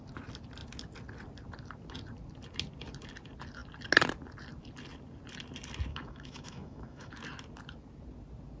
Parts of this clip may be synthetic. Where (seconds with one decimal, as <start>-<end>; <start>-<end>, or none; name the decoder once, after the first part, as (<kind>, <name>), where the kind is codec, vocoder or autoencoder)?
5.9-7.1 (autoencoder, DAC-VAE)